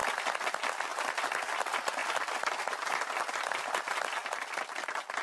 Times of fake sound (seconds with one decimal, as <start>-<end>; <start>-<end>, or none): 0.9-1.6